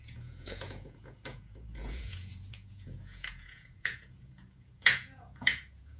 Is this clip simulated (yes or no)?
yes